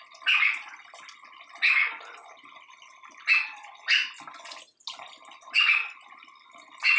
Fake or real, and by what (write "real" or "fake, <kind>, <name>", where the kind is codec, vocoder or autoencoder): real